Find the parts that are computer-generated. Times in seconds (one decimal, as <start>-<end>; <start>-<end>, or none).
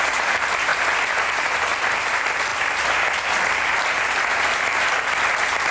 none